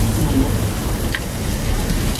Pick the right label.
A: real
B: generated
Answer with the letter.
A